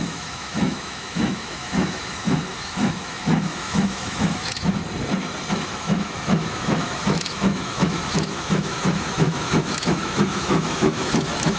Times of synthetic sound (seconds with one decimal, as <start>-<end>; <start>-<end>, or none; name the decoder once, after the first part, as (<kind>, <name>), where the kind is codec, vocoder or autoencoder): 0.0-4.8 (autoencoder, DAC-VAE); 5.5-11.6

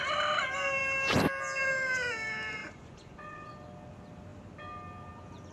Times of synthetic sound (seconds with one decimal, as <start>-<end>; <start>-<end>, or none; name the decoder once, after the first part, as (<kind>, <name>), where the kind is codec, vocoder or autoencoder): 2.6-3.5 (vocoder, Vocos)

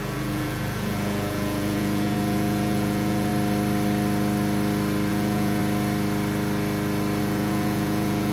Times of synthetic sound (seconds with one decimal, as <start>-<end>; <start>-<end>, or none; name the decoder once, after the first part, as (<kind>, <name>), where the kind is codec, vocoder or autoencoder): 0.0-3.3 (vocoder, Vocos); 5.1-5.6; 7.2-8.3

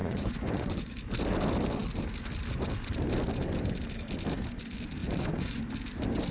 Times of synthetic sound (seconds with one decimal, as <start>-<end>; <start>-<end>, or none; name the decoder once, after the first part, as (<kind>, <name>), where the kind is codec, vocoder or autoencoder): 0.0-0.9 (vocoder, Vocos); 5.0-5.6

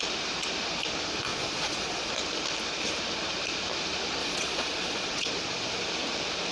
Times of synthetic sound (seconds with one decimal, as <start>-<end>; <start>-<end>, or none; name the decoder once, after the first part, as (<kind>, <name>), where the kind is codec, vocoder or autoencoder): 1.3-2.1 (vocoder, Vocos); 4.2-5.3

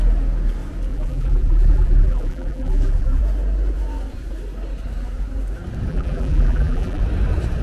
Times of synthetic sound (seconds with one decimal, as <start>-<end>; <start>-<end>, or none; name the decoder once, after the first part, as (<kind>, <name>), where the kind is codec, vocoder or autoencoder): 0.9-3.2 (vocoder, BigVGAN v2); 5.9-7.0